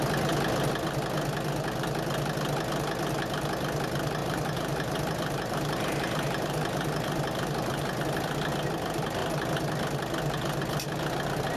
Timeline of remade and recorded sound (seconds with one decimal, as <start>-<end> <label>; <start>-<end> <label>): 0.0-4.2 recorded; 4.2-8.0 remade; 8.0-11.6 recorded